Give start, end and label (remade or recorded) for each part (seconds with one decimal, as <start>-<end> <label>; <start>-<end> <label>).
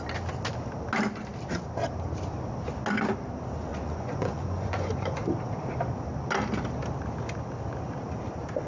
0.0-3.7 recorded; 3.7-5.2 remade; 5.2-8.7 recorded